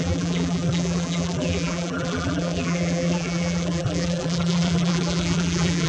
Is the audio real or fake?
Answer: fake